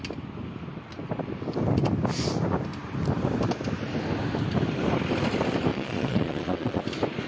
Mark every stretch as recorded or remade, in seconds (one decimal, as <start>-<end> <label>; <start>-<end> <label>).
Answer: 0.0-5.7 recorded; 5.7-6.8 remade; 6.8-7.3 recorded